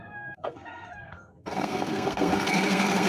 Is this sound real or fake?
fake